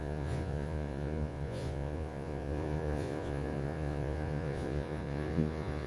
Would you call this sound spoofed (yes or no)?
yes